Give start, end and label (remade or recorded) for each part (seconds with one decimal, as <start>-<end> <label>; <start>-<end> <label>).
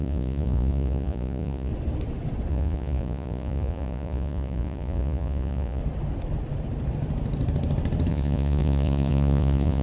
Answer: 0.0-1.7 remade; 1.7-2.5 recorded; 2.5-5.8 remade; 5.8-8.1 recorded; 8.1-9.8 remade